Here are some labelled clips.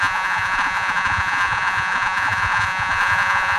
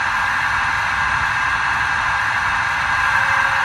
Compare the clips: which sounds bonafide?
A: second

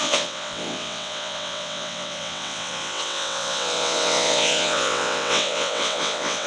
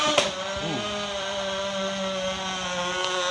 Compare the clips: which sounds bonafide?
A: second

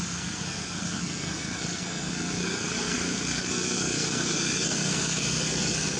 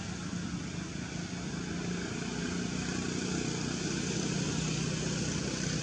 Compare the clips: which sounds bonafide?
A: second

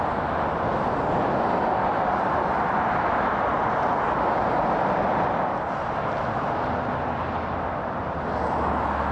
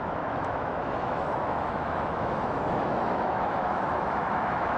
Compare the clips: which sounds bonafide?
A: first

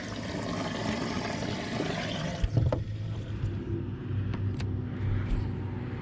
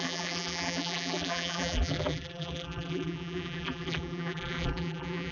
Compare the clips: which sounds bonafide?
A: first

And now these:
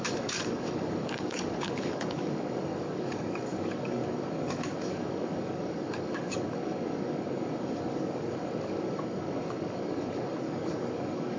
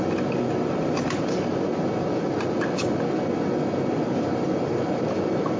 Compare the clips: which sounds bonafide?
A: second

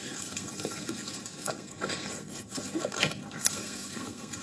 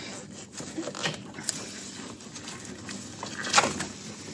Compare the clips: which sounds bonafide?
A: second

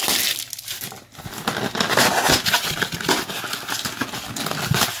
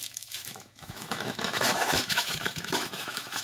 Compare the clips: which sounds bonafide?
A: first